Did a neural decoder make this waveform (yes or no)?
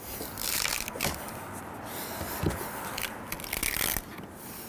no